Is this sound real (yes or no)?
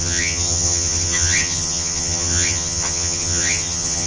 no